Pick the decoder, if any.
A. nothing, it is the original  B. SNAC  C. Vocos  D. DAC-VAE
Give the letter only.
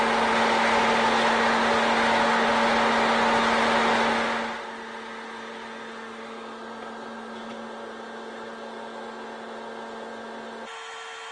A